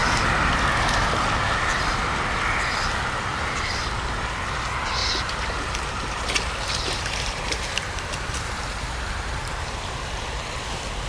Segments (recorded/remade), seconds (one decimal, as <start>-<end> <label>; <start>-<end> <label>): 0.0-3.3 recorded; 3.3-3.8 remade; 3.8-5.0 recorded; 5.0-10.1 remade; 10.1-11.1 recorded